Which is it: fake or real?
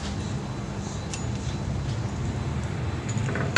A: real